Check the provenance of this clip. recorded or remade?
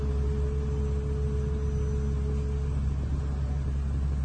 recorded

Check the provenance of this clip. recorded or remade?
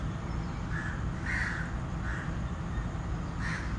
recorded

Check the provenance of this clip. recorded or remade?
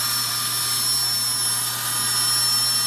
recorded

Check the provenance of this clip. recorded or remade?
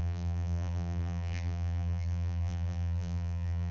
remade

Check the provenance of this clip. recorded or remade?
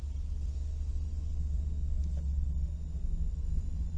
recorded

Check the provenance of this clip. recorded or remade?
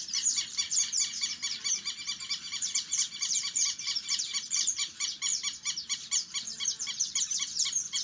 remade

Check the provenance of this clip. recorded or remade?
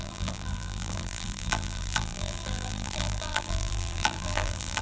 remade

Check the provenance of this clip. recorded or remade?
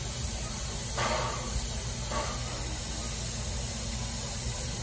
recorded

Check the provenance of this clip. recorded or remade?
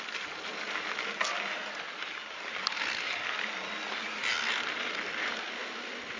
recorded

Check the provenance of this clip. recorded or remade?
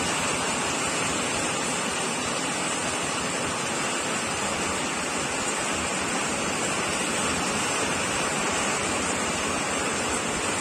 recorded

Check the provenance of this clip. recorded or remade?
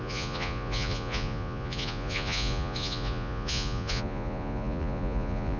remade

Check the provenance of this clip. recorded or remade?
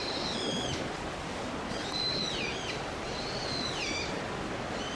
recorded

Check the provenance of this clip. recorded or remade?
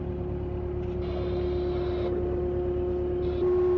recorded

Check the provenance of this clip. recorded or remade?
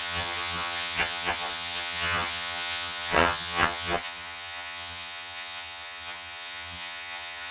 remade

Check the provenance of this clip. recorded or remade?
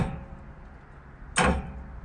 recorded